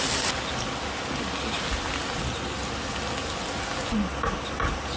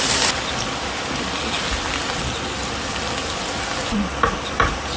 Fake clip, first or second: second